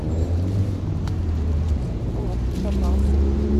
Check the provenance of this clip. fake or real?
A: fake